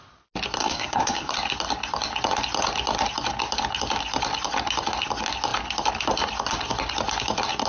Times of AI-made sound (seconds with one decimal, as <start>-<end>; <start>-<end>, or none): 0.6-1.3